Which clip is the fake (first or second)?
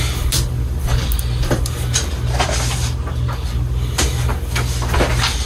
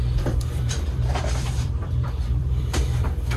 second